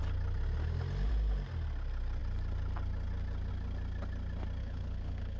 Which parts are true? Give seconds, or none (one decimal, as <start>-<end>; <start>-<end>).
0.0-4.6